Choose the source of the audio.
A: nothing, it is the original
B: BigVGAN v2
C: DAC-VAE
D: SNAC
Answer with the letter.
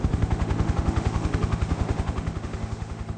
C